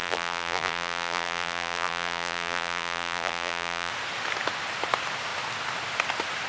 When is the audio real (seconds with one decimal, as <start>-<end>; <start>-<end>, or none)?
3.9-6.5